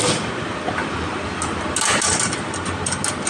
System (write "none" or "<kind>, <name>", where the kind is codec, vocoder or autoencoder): none